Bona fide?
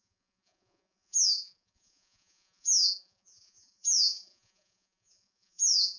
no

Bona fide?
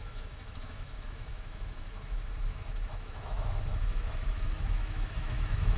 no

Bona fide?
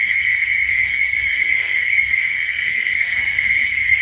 no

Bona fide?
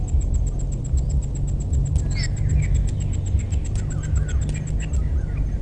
yes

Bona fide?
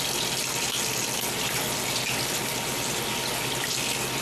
yes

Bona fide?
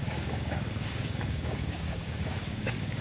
no